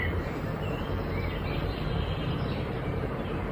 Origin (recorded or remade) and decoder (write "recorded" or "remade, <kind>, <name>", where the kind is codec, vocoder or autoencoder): remade, vocoder, BigVGAN v2